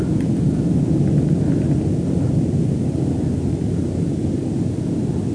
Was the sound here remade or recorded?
recorded